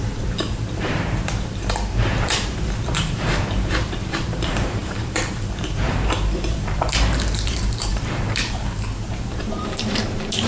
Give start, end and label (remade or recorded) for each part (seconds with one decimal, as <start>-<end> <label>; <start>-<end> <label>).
0.0-10.5 remade